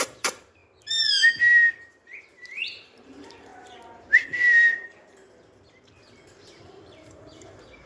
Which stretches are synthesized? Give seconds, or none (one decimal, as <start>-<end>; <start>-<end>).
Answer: 0.0-0.6; 2.2-3.5; 6.5-7.9